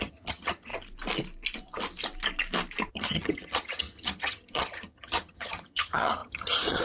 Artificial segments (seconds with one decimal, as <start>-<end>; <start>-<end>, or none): 0.0-0.7; 2.9-6.8

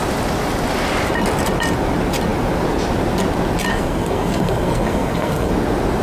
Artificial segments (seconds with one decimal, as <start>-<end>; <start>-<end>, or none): 3.7-5.5

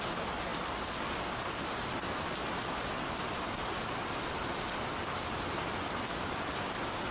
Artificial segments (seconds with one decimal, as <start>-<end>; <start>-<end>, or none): none

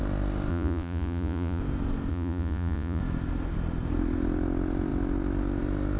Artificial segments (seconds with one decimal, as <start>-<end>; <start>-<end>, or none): 0.5-1.6; 2.1-3.0

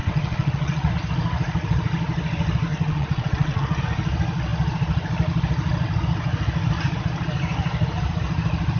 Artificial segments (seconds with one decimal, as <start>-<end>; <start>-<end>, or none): 0.0-0.9; 2.7-3.8

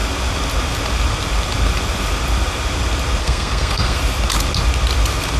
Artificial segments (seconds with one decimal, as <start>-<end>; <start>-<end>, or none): 3.2-4.0

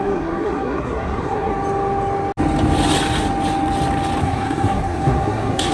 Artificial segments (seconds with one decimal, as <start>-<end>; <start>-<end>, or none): 0.0-1.5; 4.2-5.7